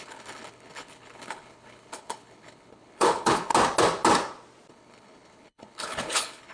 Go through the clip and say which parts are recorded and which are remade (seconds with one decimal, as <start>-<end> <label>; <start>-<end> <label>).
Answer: 0.0-3.5 remade; 3.5-4.7 recorded; 4.7-6.5 remade